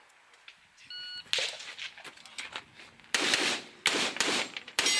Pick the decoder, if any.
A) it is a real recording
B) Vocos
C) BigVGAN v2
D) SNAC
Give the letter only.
A